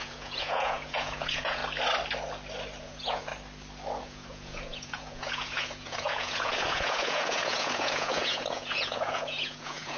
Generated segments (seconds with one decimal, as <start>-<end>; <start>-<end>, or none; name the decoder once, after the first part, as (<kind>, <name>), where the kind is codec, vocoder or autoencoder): 0.0-1.6 (vocoder, Vocos); 2.8-3.3; 4.0-10.0